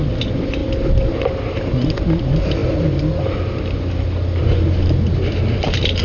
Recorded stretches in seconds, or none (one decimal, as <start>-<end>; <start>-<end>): 0.0-6.0